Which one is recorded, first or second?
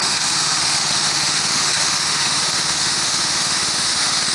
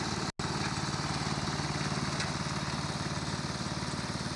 second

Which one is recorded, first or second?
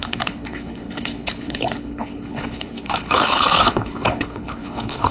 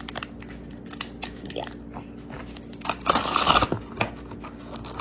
second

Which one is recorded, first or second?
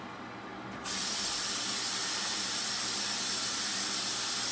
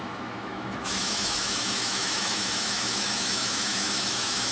first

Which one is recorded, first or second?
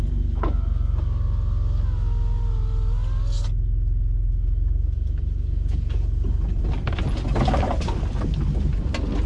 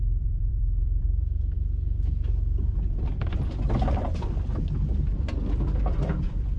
first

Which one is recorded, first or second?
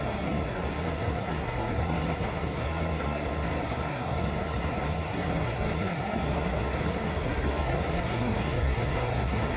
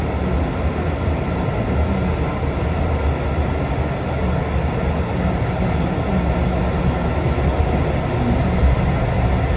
second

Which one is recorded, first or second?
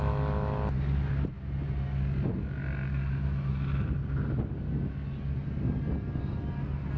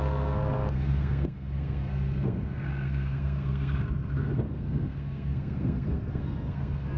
first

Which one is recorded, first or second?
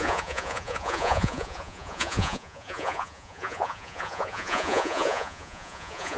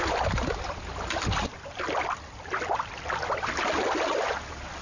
second